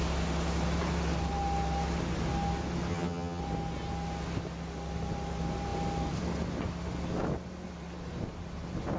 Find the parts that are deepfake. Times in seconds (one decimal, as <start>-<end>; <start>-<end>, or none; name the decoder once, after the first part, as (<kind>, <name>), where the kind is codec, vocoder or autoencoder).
2.9-3.4 (vocoder, HiFi-GAN)